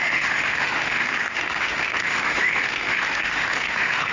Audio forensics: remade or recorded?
remade